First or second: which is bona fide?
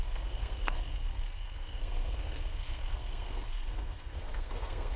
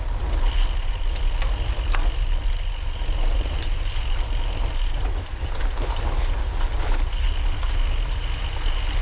second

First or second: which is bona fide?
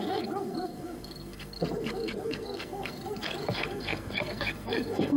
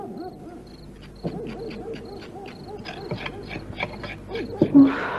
second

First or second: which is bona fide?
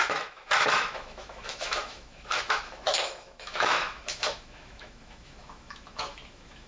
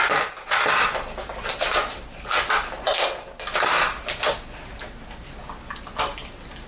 second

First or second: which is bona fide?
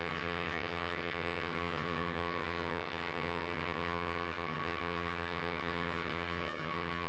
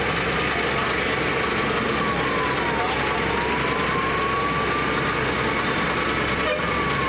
second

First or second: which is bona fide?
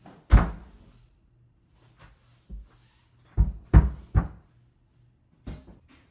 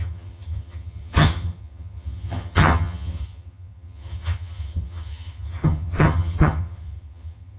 first